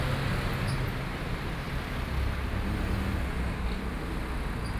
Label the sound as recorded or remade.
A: recorded